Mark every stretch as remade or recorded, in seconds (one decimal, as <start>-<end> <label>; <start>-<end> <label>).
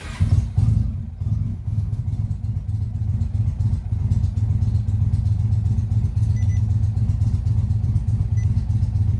0.0-1.5 recorded; 1.5-2.0 remade; 2.0-9.2 recorded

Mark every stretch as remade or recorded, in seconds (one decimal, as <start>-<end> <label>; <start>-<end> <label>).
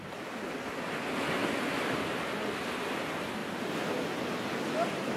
0.0-5.2 recorded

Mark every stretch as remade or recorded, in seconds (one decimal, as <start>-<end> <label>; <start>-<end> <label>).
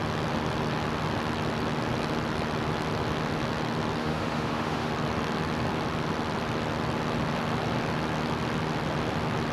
0.0-4.0 recorded; 4.0-4.9 remade; 4.9-9.5 recorded